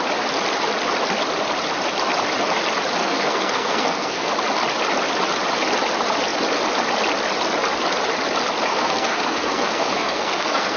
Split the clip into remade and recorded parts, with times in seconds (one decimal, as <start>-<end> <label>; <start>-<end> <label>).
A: 0.0-3.0 recorded; 3.0-4.3 remade; 4.3-8.7 recorded; 8.7-10.8 remade